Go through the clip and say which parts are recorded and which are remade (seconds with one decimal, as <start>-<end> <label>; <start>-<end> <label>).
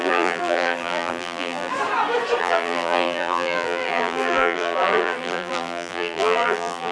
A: 0.0-1.7 remade; 1.7-2.4 recorded; 2.4-6.9 remade